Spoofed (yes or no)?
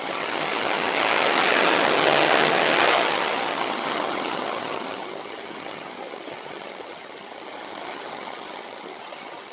yes